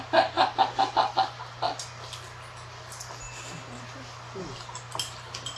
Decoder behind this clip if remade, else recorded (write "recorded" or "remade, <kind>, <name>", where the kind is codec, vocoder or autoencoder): recorded